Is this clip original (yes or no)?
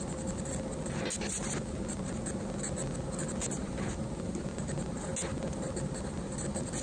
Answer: yes